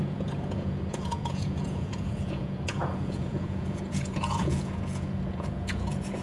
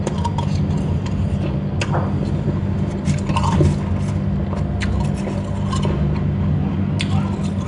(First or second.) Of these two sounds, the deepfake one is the first